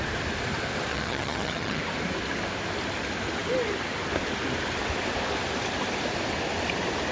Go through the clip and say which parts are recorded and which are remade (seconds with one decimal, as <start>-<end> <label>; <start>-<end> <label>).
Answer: 0.0-0.9 recorded; 0.9-1.8 remade; 1.8-7.1 recorded